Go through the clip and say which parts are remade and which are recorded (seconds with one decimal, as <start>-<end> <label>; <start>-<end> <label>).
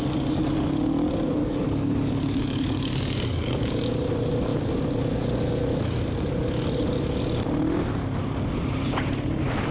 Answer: 0.0-1.4 recorded; 1.4-3.7 remade; 3.7-9.7 recorded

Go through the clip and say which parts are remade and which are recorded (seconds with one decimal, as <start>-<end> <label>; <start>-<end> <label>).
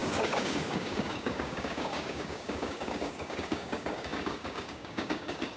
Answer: 0.0-5.6 remade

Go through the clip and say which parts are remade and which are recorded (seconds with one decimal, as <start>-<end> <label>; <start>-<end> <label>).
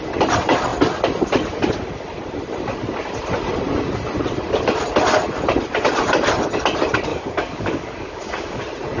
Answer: 0.0-7.1 recorded; 7.1-8.6 remade; 8.6-9.0 recorded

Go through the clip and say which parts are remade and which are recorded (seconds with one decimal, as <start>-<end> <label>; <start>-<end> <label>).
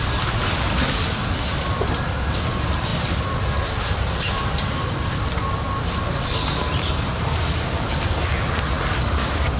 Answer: 0.0-9.6 recorded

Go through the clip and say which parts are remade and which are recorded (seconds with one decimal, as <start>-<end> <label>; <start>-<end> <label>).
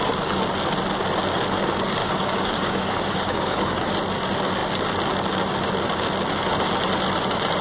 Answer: 0.0-2.0 recorded; 2.0-3.9 remade; 3.9-7.6 recorded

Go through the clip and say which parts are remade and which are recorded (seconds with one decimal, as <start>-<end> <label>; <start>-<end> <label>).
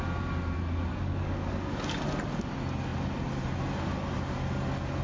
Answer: 0.0-0.9 recorded; 0.9-2.0 remade; 2.0-5.0 recorded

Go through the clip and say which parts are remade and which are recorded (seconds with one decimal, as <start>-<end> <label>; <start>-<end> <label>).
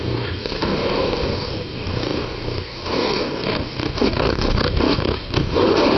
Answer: 0.0-6.0 remade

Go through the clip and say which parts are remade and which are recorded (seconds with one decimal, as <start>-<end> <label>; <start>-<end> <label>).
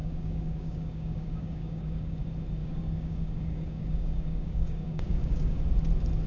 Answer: 0.0-2.2 remade; 2.2-2.6 recorded; 2.6-5.6 remade; 5.6-6.3 recorded